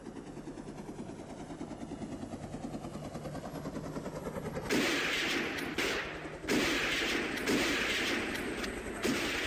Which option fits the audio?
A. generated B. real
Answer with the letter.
B